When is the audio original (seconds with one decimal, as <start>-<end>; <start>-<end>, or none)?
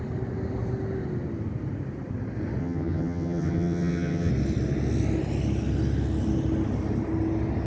0.0-2.6; 4.3-7.7